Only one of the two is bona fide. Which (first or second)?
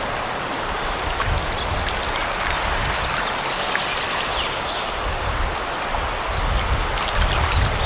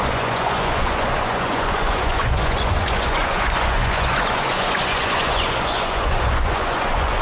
first